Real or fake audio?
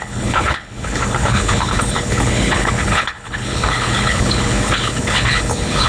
fake